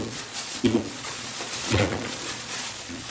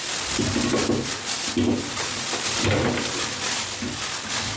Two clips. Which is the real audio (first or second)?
second